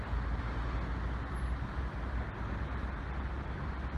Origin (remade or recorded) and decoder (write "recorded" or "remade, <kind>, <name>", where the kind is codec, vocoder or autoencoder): recorded